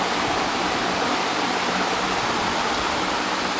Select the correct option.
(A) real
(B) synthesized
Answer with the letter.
A